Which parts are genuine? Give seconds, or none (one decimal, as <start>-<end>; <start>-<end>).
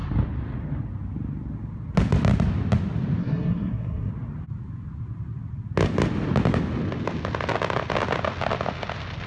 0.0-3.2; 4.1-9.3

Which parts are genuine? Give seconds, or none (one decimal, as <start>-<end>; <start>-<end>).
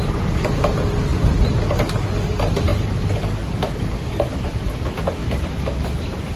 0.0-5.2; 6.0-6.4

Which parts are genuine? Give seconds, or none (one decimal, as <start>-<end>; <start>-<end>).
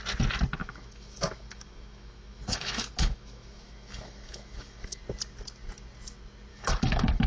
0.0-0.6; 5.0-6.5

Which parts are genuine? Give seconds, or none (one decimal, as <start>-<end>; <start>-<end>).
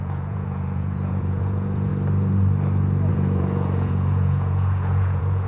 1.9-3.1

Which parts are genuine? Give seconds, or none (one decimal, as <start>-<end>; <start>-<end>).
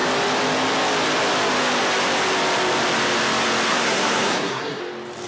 0.0-3.7; 4.8-5.3